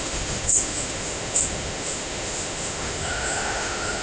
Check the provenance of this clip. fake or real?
fake